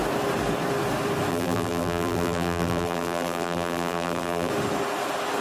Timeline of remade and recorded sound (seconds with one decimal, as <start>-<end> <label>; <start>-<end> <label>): 0.0-1.3 recorded; 1.3-4.5 remade; 4.5-5.4 recorded